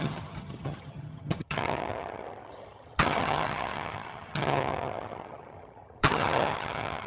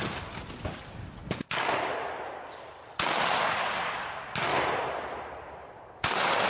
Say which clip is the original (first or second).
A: second